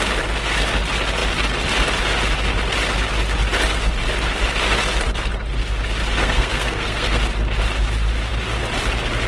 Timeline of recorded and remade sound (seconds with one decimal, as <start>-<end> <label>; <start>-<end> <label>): 0.0-6.2 recorded; 6.2-7.2 remade; 7.2-9.3 recorded